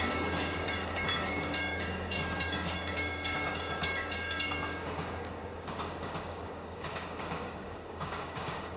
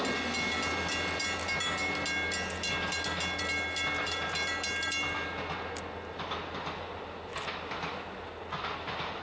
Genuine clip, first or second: second